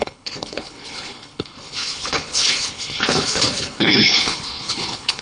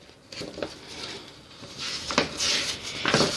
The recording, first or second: second